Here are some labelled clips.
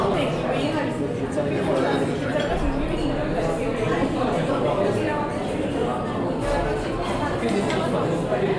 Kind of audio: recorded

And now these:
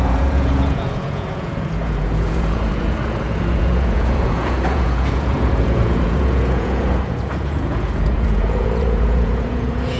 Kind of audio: remade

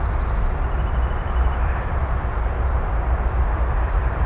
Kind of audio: recorded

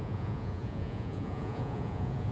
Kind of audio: remade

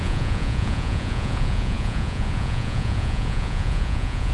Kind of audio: remade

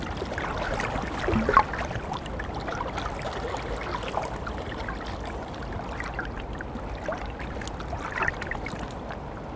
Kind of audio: recorded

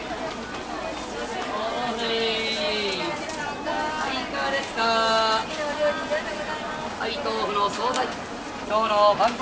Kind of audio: recorded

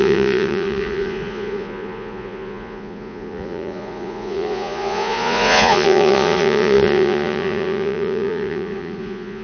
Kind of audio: remade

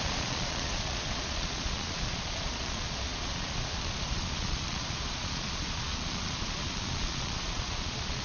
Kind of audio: remade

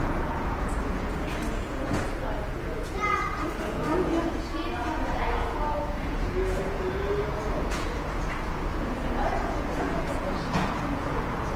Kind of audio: remade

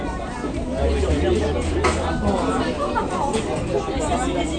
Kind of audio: recorded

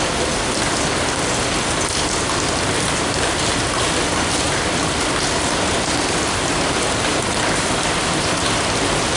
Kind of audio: recorded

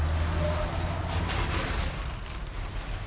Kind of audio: recorded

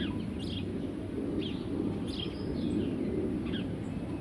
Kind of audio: recorded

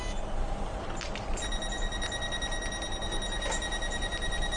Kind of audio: recorded